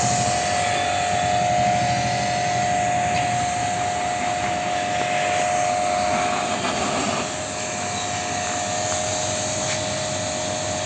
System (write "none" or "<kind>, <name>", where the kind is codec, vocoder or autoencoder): none